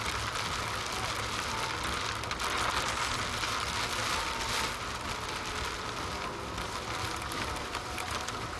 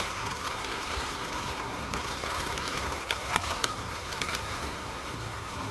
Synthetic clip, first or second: second